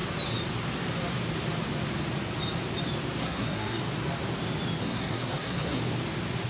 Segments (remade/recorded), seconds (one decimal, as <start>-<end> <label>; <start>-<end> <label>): 0.0-3.2 recorded; 3.2-3.8 remade; 3.8-4.8 recorded; 4.8-5.8 remade; 5.8-6.5 recorded